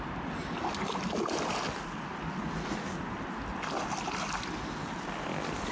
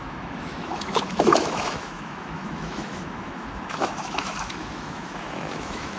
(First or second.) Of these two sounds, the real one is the first